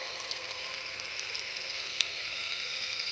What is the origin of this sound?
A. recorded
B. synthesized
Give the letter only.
B